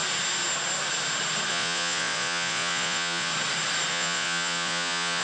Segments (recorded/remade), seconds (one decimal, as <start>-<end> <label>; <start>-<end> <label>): 0.0-1.5 recorded; 1.5-3.3 remade; 3.3-3.9 recorded; 3.9-5.2 remade